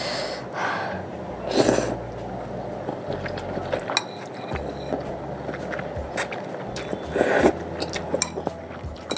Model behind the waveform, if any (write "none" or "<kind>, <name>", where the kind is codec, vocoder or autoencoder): none